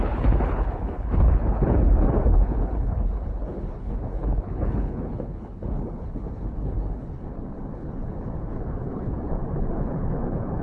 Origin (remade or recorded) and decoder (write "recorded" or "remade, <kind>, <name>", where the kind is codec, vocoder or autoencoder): remade, codec, HILCodec